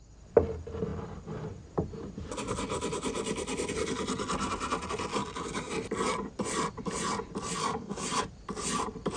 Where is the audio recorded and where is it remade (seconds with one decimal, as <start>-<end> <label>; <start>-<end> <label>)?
0.0-5.1 recorded; 5.1-5.7 remade; 5.7-7.6 recorded; 7.6-8.2 remade; 8.2-9.2 recorded